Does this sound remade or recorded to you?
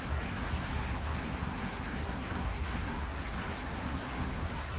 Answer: remade